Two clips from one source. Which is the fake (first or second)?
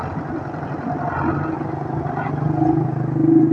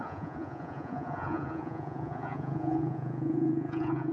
second